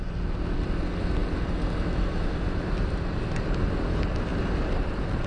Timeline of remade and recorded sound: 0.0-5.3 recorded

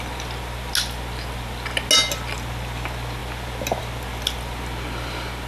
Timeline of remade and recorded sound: 0.0-5.5 recorded

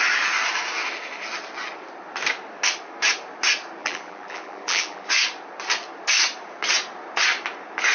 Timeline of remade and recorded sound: 0.0-3.8 recorded; 3.8-5.1 remade; 5.1-7.9 recorded

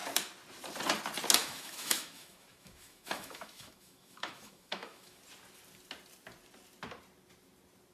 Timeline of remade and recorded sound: 0.0-1.4 recorded; 1.4-5.2 remade; 5.2-7.9 recorded

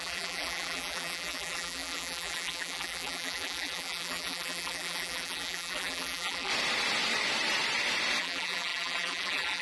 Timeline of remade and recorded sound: 0.0-6.5 remade; 6.5-8.2 recorded; 8.2-9.6 remade

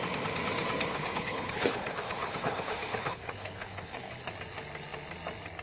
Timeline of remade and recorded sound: 0.0-0.9 recorded; 0.9-4.3 remade; 4.3-5.6 recorded

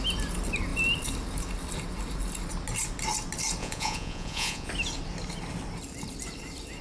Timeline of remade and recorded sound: 0.0-3.6 recorded; 3.6-4.7 remade; 4.7-6.8 recorded

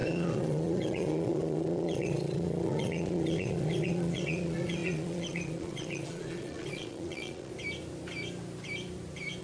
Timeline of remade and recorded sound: 0.0-7.5 remade; 7.5-9.4 recorded